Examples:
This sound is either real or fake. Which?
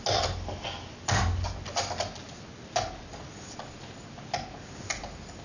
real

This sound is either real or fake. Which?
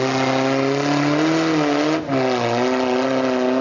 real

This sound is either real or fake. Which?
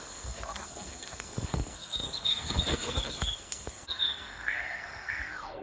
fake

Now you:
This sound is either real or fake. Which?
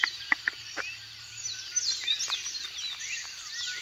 real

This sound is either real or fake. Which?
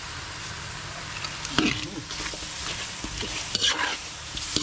fake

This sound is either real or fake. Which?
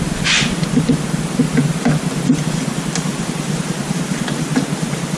real